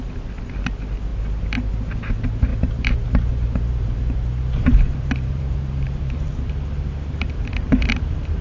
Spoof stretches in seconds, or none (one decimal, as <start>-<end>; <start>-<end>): 2.5-6.5